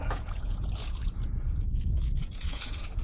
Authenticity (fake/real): fake